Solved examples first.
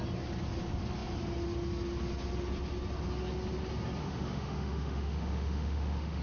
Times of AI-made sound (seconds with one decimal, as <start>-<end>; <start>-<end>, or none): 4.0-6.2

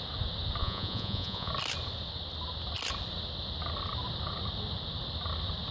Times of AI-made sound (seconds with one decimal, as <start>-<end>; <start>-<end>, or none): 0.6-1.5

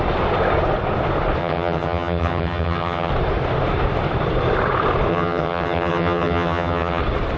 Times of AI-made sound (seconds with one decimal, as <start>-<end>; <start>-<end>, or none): 1.4-3.1; 5.1-7.0

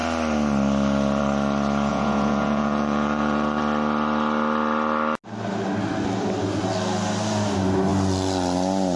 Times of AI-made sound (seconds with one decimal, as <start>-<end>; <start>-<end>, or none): 1.9-3.6

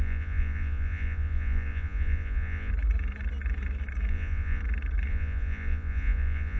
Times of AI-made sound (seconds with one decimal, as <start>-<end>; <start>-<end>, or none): 0.0-2.7; 4.1-4.6; 5.1-6.6

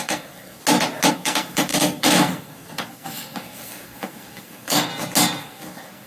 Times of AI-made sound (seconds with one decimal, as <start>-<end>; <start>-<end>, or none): 0.0-0.6; 1.1-4.9; 5.4-6.1